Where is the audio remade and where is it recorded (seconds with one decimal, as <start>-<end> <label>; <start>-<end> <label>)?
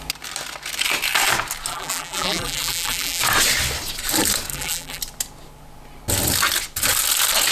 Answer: 0.0-1.7 recorded; 1.7-3.2 remade; 3.2-4.5 recorded; 4.5-5.0 remade; 5.0-7.5 recorded